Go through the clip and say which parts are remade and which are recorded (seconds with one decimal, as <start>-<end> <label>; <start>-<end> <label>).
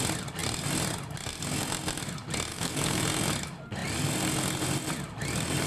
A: 0.0-2.5 recorded; 2.5-3.0 remade; 3.0-5.7 recorded